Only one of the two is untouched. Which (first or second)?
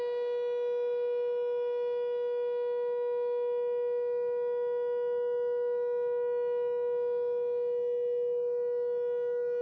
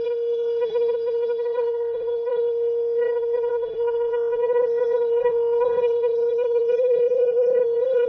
first